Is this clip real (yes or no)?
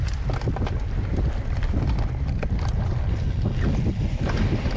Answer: yes